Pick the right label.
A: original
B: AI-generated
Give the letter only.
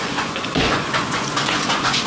B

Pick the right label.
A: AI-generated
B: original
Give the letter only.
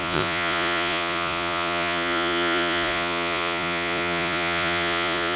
A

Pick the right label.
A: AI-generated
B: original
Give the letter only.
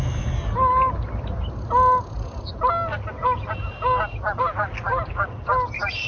B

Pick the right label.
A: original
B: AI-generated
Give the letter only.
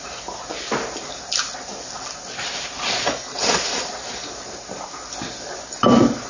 A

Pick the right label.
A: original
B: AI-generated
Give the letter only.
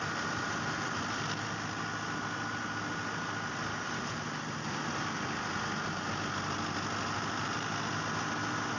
A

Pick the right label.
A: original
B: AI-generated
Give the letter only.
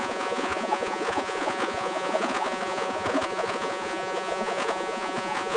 B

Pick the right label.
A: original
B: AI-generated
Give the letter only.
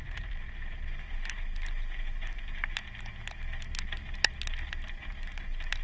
A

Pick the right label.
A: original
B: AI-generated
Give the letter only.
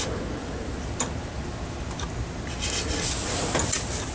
A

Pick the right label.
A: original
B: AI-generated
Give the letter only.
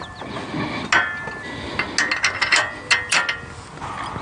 A